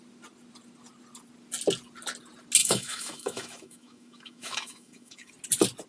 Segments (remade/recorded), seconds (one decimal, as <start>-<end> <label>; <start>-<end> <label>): 0.0-2.6 recorded; 2.6-5.3 remade; 5.3-5.9 recorded